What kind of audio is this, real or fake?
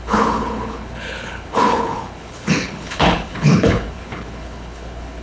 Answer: fake